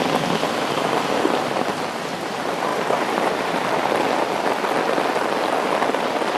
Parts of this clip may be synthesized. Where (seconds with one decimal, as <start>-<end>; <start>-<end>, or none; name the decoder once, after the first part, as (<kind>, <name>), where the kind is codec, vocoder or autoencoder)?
2.7-3.5 (vocoder, BigVGAN v2)